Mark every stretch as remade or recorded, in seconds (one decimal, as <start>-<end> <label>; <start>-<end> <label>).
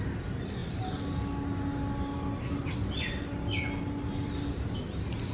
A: 0.0-5.3 recorded